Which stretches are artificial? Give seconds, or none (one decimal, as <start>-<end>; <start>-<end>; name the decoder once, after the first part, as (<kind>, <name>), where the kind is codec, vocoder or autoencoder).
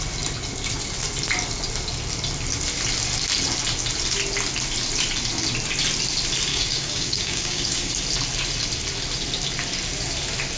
6.5-7.9 (codec, DAC)